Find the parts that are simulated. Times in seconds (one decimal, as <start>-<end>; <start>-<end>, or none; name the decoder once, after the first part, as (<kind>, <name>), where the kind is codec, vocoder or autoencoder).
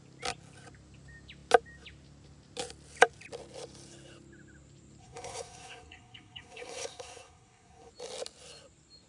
5.0-7.9 (codec, SNAC)